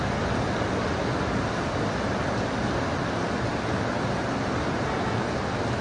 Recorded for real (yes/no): yes